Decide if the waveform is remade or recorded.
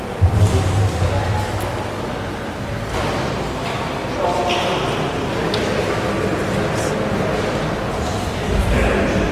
recorded